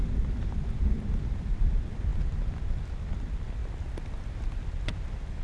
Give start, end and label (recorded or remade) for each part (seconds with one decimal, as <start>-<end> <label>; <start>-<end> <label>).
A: 0.0-3.6 remade; 3.6-5.4 recorded